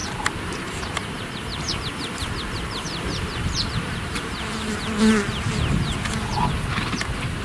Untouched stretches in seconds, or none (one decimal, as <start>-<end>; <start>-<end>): 1.8-2.2; 4.3-7.4